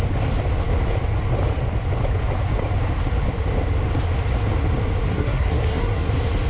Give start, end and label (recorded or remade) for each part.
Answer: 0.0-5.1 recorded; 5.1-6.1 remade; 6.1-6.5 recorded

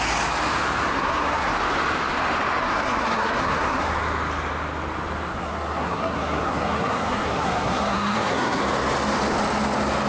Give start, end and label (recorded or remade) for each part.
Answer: 0.0-0.9 recorded; 0.9-1.5 remade; 1.5-2.6 recorded; 2.6-3.9 remade; 3.9-5.3 recorded; 5.3-8.6 remade; 8.6-10.1 recorded

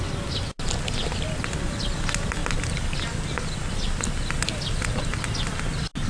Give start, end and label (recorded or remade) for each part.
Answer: 0.0-6.1 recorded